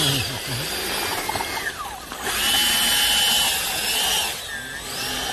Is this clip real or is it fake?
real